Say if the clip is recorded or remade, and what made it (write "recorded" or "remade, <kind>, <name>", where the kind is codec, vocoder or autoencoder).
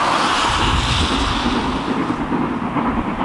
recorded